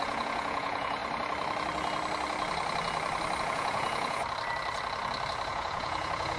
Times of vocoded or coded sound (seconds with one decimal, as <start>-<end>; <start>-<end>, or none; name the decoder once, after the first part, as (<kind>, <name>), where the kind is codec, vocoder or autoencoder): 0.0-1.0 (vocoder, Vocos); 3.4-4.2; 5.5-6.4